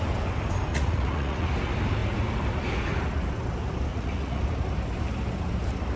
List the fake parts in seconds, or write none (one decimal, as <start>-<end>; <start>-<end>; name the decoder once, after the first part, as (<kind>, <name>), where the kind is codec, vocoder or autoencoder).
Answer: 0.7-1.5 (vocoder, Vocos); 3.9-4.4